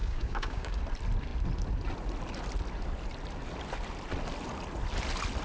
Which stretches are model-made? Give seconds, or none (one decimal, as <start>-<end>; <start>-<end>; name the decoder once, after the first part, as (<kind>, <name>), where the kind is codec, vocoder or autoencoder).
0.0-0.8 (codec, DAC)